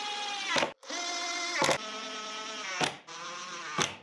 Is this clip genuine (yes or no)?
yes